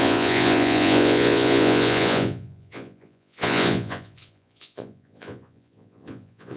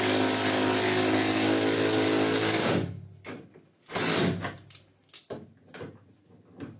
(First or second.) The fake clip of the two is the first